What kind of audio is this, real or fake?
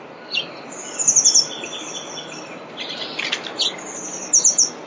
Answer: real